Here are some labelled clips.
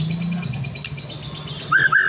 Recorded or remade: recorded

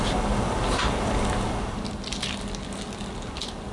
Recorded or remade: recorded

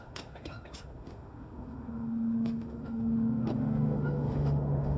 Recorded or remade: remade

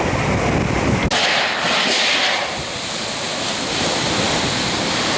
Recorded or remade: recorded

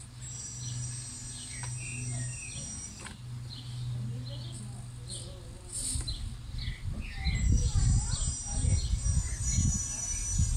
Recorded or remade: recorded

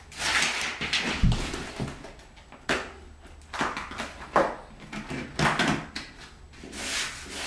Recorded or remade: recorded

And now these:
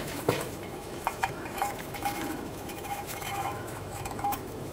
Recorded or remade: remade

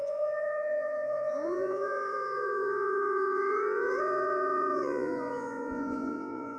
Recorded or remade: remade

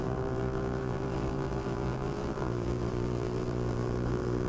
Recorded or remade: remade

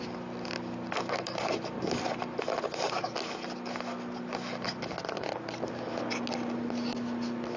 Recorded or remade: recorded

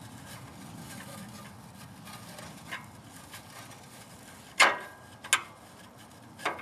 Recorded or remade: recorded